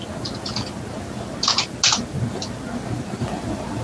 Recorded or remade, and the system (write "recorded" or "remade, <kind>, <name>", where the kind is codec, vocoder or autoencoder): recorded